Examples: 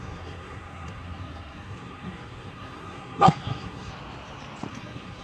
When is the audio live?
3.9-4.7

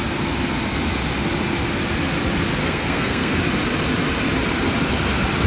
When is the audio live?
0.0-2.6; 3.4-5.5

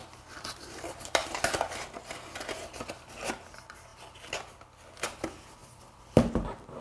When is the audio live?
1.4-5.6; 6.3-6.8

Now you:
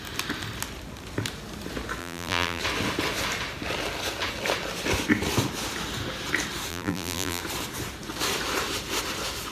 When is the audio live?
0.0-2.0; 2.6-6.7; 7.4-9.5

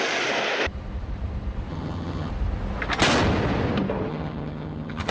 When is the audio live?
0.0-1.7; 2.3-4.1

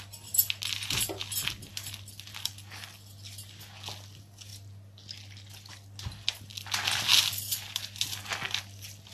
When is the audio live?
0.0-9.1